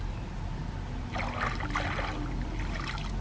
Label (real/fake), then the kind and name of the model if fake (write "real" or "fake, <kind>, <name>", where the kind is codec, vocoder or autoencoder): real